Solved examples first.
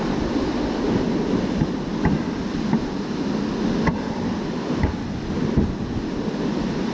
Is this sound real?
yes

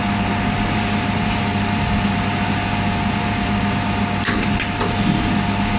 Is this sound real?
yes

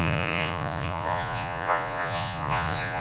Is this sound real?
no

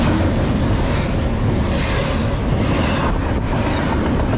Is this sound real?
yes